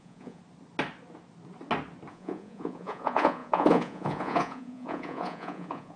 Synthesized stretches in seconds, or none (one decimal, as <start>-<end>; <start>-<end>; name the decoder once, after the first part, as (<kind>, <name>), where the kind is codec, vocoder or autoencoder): 0.0-0.4 (vocoder, Vocos); 2.1-6.0